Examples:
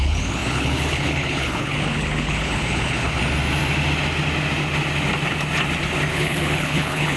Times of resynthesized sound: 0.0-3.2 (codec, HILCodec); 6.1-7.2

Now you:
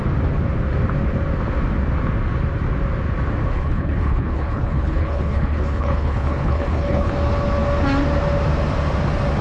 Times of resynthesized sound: 3.5-7.1 (codec, HILCodec)

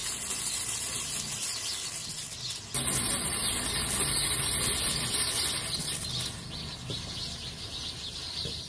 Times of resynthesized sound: none